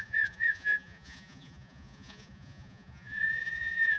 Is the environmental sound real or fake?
fake